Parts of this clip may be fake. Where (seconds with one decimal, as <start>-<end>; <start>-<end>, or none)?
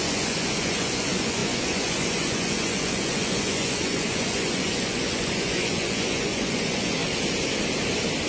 0.0-7.0